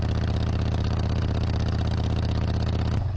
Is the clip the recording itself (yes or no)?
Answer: yes